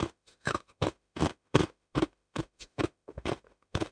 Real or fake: fake